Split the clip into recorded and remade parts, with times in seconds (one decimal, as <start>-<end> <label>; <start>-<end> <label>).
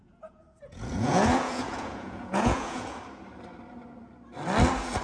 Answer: 0.0-3.0 remade; 3.0-5.0 recorded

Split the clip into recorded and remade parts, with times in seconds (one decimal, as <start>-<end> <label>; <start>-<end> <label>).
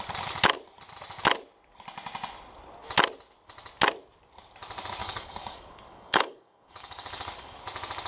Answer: 0.0-5.0 recorded; 5.0-7.6 remade; 7.6-8.1 recorded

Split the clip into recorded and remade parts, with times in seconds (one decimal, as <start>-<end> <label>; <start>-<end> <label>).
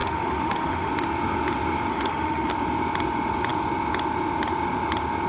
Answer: 0.0-0.9 remade; 0.9-1.9 recorded; 1.9-2.5 remade; 2.5-5.3 recorded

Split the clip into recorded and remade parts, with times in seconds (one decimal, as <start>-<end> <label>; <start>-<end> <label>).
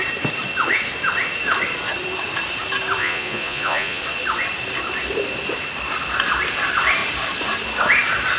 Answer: 0.0-3.0 recorded; 3.0-4.0 remade; 4.0-8.4 recorded